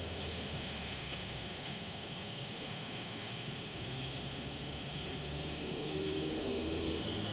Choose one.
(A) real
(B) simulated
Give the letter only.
B